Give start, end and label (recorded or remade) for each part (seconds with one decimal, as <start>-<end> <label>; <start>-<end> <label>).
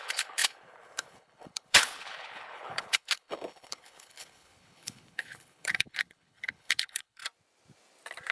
0.0-7.2 remade; 7.2-8.3 recorded